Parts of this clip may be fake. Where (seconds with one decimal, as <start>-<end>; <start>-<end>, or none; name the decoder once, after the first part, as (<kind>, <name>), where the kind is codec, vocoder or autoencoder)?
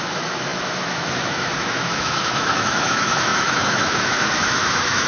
0.0-5.1 (autoencoder, DAC-VAE)